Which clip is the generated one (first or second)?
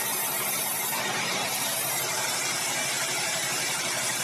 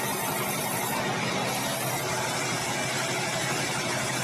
first